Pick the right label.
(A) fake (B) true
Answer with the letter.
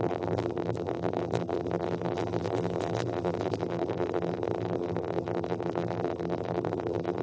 A